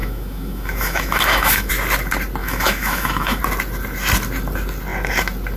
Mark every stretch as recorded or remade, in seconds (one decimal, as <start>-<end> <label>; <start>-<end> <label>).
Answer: 0.0-1.7 remade; 1.7-2.4 recorded; 2.4-3.4 remade; 3.4-5.6 recorded